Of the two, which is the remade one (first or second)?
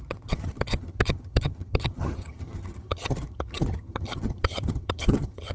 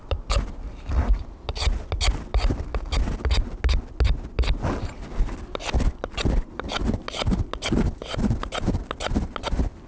first